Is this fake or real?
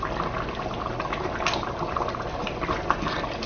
real